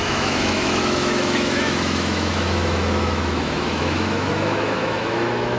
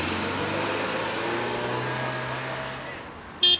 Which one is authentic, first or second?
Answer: second